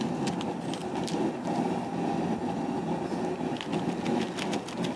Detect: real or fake real